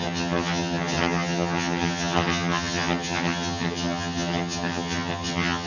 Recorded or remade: remade